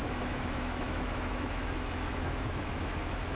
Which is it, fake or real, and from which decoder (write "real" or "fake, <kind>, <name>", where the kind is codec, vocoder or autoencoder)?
fake, autoencoder, DAC-VAE